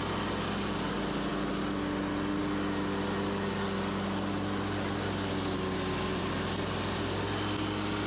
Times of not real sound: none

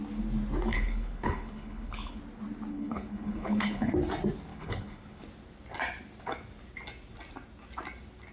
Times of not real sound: 0.7-2.2; 2.7-3.9; 4.5-5.2

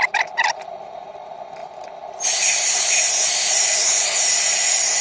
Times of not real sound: none